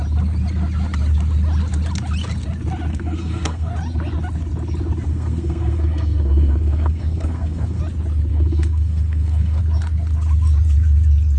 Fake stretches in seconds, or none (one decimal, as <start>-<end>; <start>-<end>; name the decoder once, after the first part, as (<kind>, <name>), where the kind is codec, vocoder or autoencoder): 2.9-3.7 (codec, SNAC); 5.1-7.8; 8.3-9.6